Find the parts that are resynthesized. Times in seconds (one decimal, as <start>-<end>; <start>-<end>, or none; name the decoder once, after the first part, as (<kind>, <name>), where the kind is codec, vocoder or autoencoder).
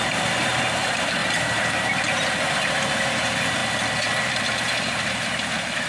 0.0-3.6 (vocoder, BigVGAN v2); 4.2-5.9